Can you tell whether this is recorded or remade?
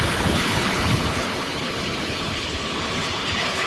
remade